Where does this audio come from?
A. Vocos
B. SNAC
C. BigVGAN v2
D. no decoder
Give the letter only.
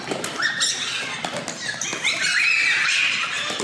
D